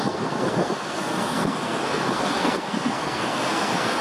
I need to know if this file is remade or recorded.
remade